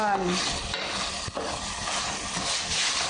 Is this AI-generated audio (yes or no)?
no